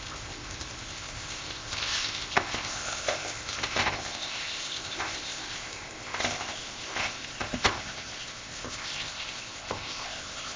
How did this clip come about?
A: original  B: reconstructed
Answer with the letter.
B